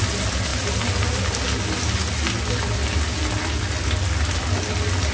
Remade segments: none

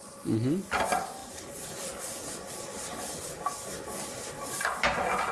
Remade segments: none

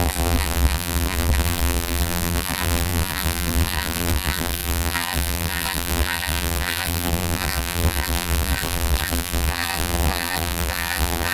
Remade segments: 0.0-11.3 (vocoder, BigVGAN v2)